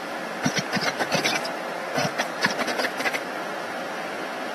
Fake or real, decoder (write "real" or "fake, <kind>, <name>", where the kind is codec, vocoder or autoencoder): real